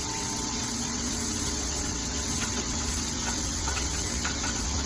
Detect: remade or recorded remade